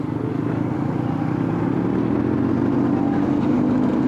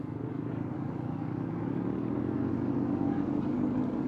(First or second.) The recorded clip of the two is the first